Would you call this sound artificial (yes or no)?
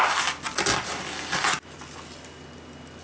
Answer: no